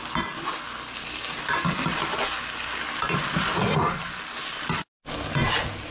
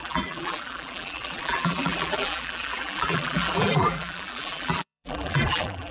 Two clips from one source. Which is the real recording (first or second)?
first